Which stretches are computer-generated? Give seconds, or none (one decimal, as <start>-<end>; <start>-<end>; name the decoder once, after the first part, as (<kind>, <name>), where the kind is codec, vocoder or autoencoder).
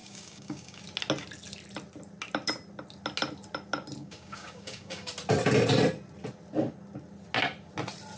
0.0-0.8 (codec, DAC); 4.0-5.1